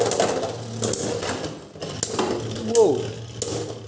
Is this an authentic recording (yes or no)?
yes